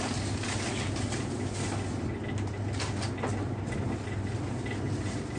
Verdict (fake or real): real